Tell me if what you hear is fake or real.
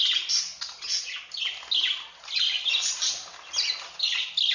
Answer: real